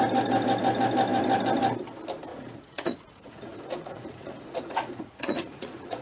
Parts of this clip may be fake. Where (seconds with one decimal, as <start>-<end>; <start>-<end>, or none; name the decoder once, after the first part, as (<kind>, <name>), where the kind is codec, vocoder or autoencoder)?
2.3-6.0 (vocoder, Vocos)